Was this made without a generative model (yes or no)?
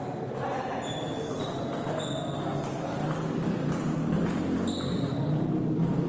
yes